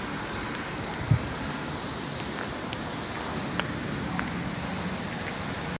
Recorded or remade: recorded